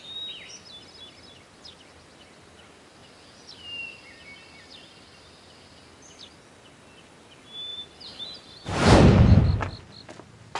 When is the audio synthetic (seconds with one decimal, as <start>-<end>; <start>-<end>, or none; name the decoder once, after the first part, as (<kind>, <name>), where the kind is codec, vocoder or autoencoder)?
7.7-9.4 (vocoder, BigVGAN v2)